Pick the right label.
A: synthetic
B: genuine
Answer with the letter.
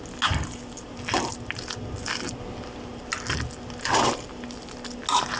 B